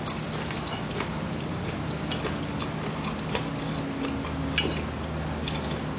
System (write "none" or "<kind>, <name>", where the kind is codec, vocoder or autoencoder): none